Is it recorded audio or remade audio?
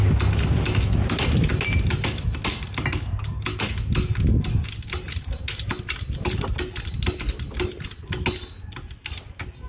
recorded